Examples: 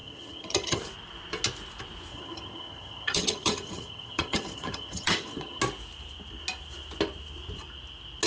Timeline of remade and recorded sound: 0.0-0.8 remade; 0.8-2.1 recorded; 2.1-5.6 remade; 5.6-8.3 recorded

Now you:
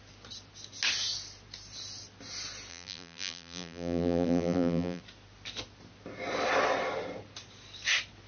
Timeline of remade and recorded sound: 0.0-2.7 recorded; 2.7-5.0 remade; 5.0-8.3 recorded